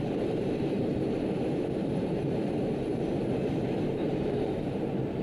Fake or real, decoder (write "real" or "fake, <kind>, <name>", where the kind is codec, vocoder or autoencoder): fake, vocoder, BigVGAN v2